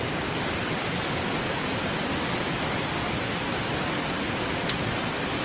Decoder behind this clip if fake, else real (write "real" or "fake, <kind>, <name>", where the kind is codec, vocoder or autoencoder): real